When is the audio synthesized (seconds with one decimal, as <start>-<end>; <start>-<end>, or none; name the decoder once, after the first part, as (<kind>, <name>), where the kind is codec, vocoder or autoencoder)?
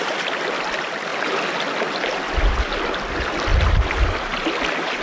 none